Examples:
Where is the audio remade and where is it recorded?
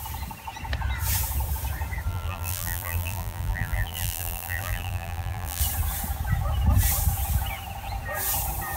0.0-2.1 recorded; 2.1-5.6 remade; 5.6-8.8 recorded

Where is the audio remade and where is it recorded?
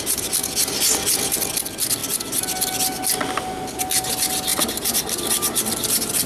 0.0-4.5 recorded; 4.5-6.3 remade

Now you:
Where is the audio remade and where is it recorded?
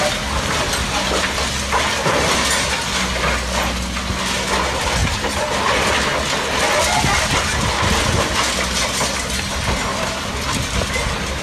0.0-9.9 recorded; 9.9-10.6 remade; 10.6-11.4 recorded